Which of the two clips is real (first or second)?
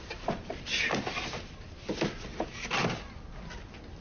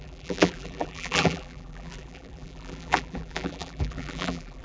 first